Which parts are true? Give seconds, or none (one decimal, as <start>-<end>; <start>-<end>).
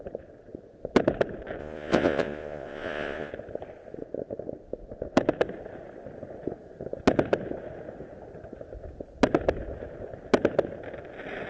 0.0-1.6; 3.3-11.5